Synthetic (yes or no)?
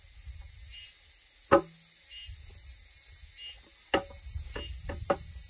no